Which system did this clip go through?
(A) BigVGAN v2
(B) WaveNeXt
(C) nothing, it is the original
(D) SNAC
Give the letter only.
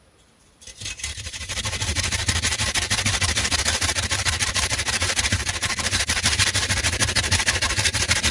A